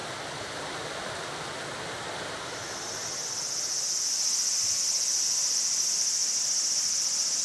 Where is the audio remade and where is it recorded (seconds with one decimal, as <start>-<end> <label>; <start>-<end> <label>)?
0.0-7.4 recorded